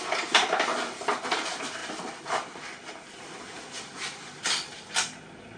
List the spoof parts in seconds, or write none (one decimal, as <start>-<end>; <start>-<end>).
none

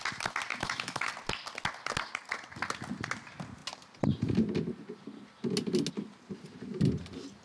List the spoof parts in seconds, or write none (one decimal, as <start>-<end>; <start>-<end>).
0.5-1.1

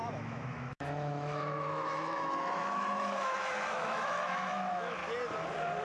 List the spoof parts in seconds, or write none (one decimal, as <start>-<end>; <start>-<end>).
0.0-5.0